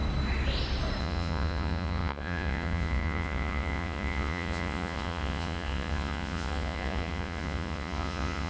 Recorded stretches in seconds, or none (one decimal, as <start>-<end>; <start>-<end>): 0.0-1.0